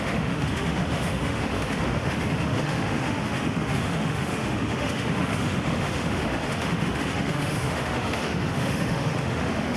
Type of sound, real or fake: fake